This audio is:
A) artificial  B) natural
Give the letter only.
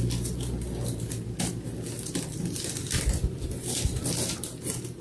B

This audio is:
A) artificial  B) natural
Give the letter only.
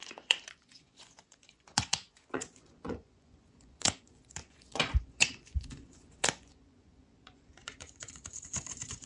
A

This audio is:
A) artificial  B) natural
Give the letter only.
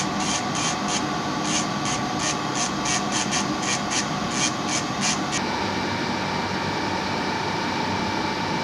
B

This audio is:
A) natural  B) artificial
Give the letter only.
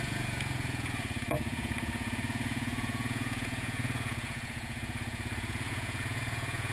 B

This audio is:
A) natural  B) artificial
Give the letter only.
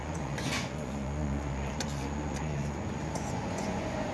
B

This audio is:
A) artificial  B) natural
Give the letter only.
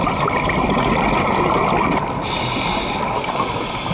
B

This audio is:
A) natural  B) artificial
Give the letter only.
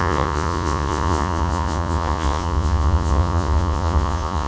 B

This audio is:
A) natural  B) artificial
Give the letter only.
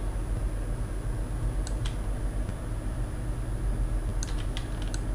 A